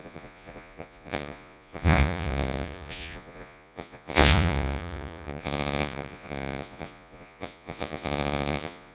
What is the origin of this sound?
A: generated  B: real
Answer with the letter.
A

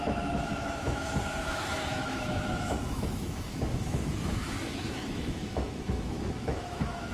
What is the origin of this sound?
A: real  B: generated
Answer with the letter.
B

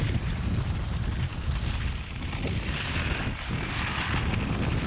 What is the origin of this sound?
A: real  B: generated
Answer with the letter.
A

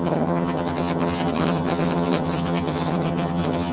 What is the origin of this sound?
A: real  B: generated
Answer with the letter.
B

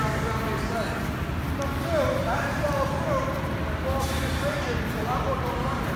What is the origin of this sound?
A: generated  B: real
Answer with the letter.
B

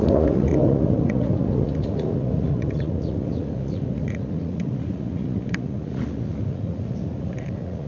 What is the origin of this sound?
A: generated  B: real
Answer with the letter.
A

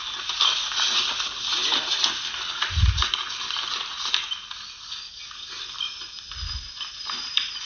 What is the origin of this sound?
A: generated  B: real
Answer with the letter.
B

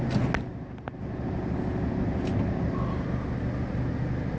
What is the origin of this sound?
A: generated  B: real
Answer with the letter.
B